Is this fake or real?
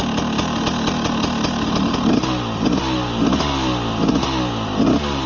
real